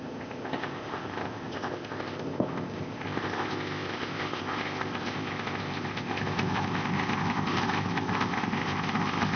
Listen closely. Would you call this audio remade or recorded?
remade